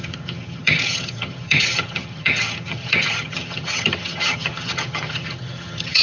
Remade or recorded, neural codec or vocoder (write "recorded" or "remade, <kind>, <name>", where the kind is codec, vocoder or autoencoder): remade, vocoder, HiFi-GAN